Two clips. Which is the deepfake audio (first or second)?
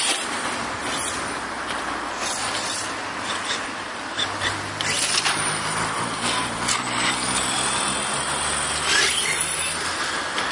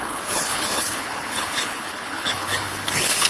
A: second